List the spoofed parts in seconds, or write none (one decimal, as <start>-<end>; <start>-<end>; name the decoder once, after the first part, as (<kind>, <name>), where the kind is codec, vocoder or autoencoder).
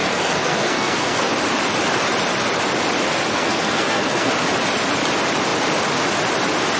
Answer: 0.0-1.3 (codec, SNAC); 3.3-4.3